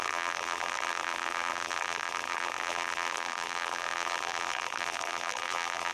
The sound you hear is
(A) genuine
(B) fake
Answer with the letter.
B